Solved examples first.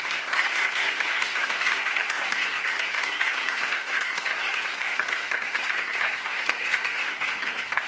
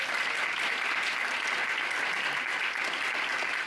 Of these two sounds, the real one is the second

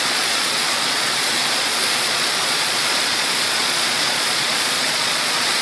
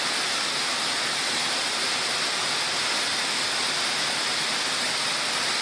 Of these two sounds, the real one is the second